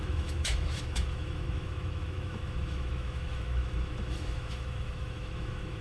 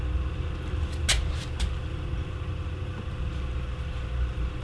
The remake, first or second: first